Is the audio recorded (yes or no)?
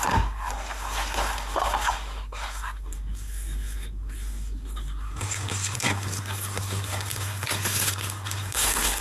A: no